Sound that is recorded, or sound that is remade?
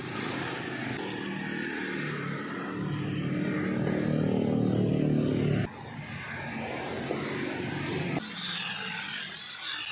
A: recorded